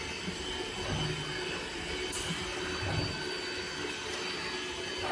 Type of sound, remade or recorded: recorded